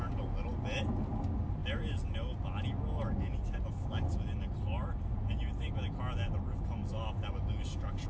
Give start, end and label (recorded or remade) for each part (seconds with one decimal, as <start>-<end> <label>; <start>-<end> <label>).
0.0-8.1 recorded